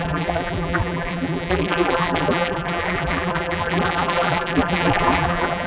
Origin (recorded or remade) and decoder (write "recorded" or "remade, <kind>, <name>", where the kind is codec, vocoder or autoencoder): remade, vocoder, BigVGAN v2